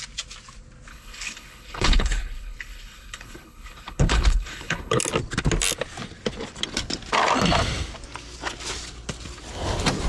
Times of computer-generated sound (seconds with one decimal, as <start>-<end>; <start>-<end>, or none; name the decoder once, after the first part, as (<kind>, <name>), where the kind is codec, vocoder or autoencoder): 0.9-5.0 (codec, HILCodec)